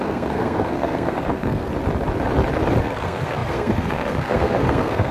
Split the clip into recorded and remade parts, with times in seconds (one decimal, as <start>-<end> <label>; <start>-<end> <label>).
0.0-1.7 remade; 1.7-2.8 recorded; 2.8-5.1 remade